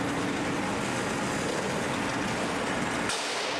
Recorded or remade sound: recorded